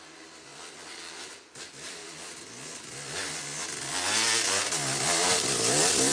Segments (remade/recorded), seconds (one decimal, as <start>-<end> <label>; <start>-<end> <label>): 0.0-6.1 recorded